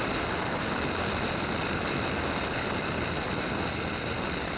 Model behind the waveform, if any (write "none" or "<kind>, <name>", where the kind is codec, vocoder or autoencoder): none